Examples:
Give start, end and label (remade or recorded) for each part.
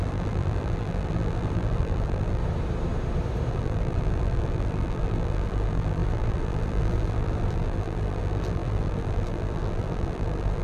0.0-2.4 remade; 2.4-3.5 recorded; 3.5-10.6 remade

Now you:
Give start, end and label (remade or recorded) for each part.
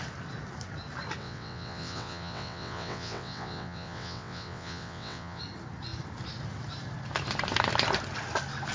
0.0-1.2 recorded; 1.2-5.4 remade; 5.4-8.7 recorded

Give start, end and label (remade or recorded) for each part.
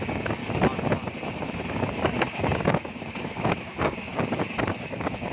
0.0-0.4 remade; 0.4-1.7 recorded; 1.7-5.3 remade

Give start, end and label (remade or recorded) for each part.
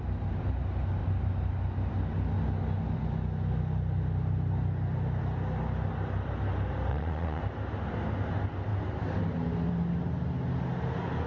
0.0-6.9 recorded; 6.9-7.4 remade; 7.4-11.3 recorded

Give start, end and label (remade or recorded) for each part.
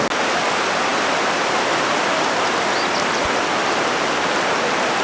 0.0-5.0 recorded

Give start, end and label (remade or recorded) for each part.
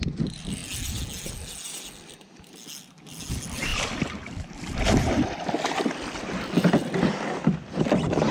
0.0-3.7 recorded; 3.7-5.5 remade; 5.5-8.3 recorded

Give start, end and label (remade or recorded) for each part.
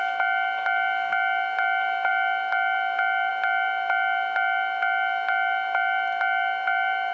0.0-7.1 recorded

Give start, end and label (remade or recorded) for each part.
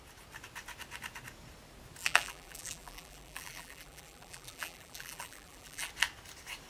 0.0-2.0 recorded; 2.0-5.9 remade; 5.9-6.7 recorded